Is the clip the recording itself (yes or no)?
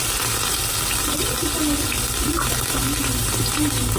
yes